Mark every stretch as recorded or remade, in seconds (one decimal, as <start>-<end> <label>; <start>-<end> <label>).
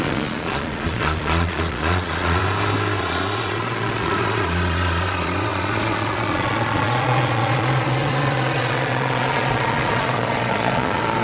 0.0-2.4 remade; 2.4-3.0 recorded; 3.0-11.2 remade